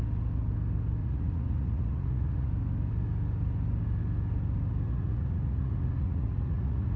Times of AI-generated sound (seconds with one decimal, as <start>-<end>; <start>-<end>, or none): 1.0-2.5; 4.9-7.0